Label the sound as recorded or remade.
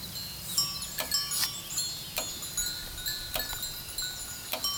recorded